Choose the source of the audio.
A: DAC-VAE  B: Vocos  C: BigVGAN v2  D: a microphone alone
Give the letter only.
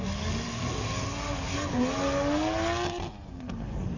D